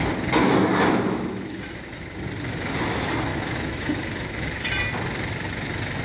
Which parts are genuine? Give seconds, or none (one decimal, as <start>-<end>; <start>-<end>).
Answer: 0.0-0.4; 1.6-3.3; 4.7-6.0